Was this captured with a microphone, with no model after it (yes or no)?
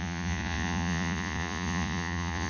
no